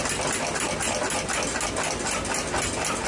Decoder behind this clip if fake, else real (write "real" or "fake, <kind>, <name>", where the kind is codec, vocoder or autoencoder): real